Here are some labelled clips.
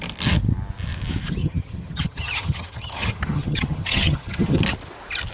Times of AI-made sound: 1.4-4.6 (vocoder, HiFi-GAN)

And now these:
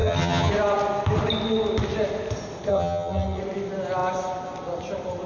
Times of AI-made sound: 0.0-0.5 (vocoder, HiFi-GAN); 2.7-3.4

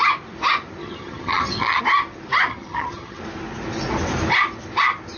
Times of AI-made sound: 0.8-1.8 (vocoder, HiFi-GAN); 2.5-3.2